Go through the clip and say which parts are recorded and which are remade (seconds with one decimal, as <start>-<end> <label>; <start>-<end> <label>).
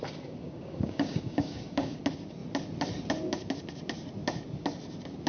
0.0-0.4 recorded; 0.4-2.0 remade; 2.0-5.3 recorded